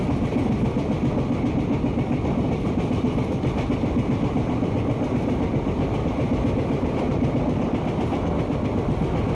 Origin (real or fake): real